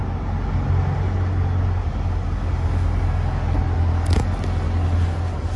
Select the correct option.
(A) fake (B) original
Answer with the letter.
B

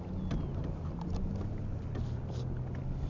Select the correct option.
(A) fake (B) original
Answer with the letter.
B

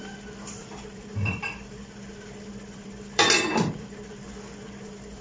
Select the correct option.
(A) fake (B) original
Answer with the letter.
A